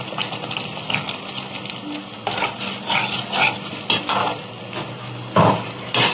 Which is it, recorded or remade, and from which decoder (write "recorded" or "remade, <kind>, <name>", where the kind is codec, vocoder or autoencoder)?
recorded